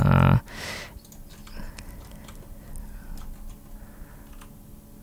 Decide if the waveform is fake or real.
real